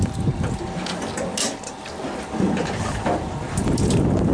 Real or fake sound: real